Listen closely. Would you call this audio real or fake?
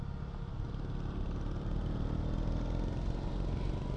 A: real